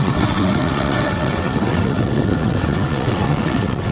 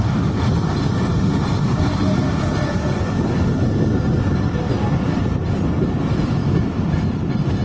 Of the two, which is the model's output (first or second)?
first